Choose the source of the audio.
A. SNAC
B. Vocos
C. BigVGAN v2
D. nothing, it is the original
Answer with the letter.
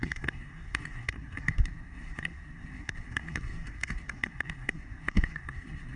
A